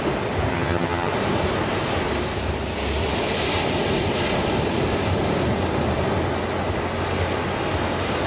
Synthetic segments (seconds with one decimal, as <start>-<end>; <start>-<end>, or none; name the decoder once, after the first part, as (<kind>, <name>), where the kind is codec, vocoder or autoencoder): 0.5-1.1 (vocoder, HiFi-GAN)